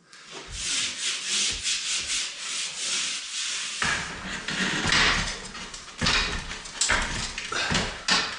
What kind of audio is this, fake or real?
real